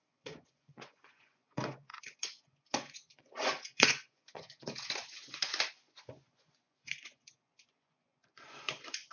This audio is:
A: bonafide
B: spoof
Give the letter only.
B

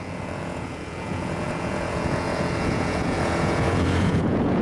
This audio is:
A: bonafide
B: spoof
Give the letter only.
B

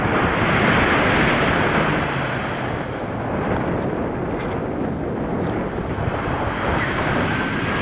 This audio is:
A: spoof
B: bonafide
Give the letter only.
B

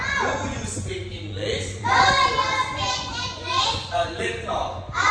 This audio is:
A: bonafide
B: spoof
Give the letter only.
B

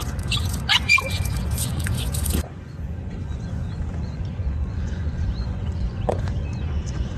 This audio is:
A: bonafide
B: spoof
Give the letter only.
B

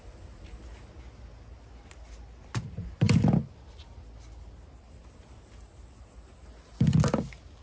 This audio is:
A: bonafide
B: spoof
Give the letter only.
A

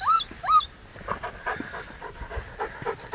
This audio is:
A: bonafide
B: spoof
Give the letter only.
A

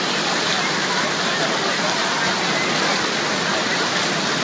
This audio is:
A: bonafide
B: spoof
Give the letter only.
A